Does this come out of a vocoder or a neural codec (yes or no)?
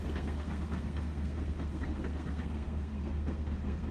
yes